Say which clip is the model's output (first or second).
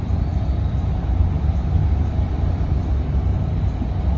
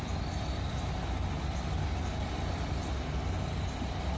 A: first